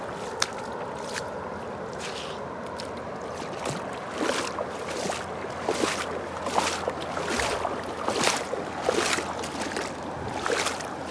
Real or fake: real